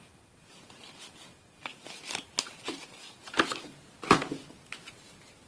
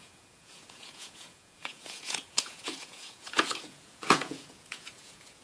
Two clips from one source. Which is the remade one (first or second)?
second